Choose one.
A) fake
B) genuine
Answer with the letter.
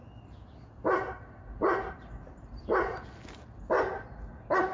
B